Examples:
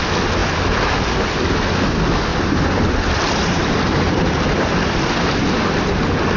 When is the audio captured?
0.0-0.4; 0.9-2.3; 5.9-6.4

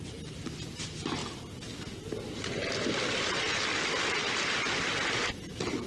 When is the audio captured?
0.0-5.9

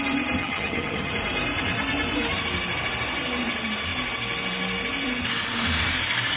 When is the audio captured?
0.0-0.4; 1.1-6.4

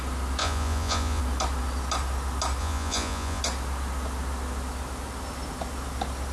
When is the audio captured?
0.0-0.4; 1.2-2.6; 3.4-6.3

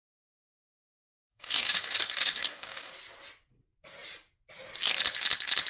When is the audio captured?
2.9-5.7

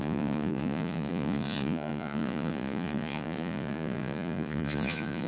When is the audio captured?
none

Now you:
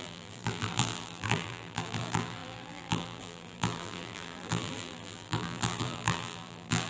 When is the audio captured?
none

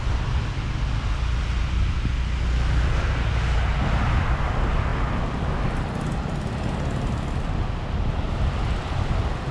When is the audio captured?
0.0-9.5